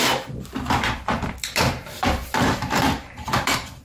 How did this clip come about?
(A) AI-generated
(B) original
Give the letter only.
A